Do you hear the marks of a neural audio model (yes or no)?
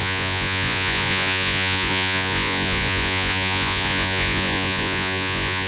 yes